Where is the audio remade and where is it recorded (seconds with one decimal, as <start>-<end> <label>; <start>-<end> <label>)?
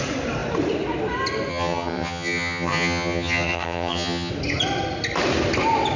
0.0-1.5 recorded; 1.5-4.3 remade; 4.3-6.0 recorded